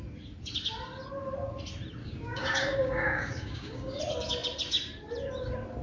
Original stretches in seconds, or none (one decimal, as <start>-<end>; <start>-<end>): 0.0-2.0; 4.0-5.8